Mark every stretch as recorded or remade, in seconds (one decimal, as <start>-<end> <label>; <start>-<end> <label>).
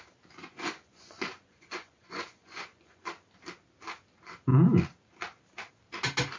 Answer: 0.0-0.4 recorded; 0.4-3.1 remade; 3.1-6.4 recorded